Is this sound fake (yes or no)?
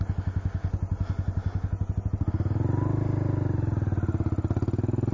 no